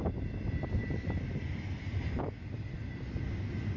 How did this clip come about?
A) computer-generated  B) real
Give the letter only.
B